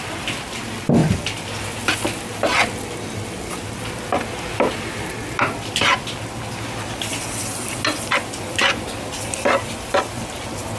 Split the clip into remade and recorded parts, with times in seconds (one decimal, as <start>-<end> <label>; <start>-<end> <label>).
0.0-10.8 recorded